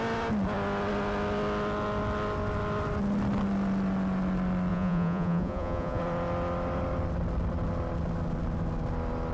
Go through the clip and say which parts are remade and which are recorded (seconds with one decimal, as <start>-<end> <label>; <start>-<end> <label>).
0.0-4.7 recorded; 4.7-6.0 remade; 6.0-9.3 recorded